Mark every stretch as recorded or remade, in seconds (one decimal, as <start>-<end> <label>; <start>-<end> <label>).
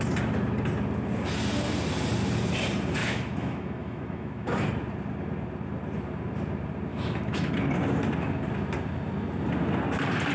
0.0-3.0 recorded; 3.0-4.7 remade; 4.7-6.9 recorded; 6.9-7.5 remade; 7.5-10.3 recorded